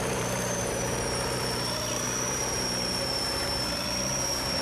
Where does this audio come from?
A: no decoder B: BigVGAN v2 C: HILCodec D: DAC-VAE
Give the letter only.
B